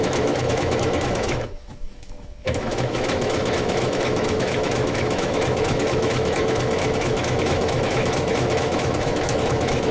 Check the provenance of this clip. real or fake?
fake